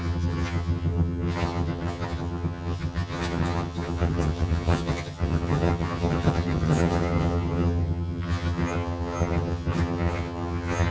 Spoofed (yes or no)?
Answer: yes